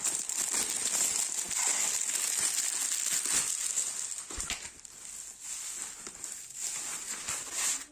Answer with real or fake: real